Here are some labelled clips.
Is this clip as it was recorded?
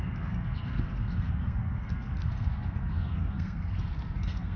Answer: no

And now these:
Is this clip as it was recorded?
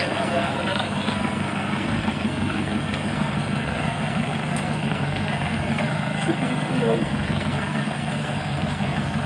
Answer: no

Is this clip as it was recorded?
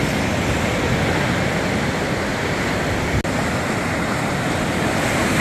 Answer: yes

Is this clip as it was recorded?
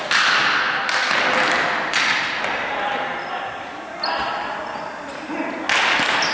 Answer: yes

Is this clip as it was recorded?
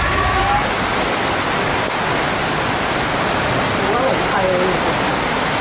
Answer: yes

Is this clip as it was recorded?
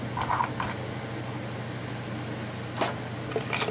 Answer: yes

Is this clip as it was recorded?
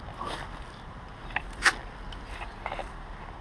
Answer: yes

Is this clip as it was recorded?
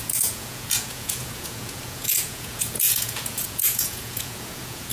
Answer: no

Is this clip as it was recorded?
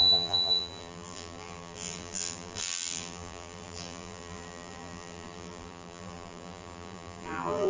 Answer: no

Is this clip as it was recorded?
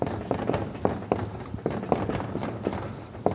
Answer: yes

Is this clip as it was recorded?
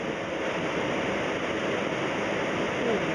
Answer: yes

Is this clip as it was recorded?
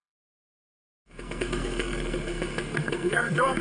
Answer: no